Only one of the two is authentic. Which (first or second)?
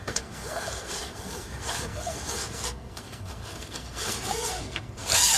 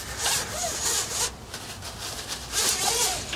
second